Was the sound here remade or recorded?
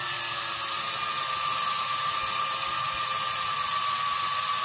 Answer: recorded